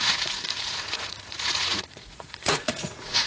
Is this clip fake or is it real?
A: fake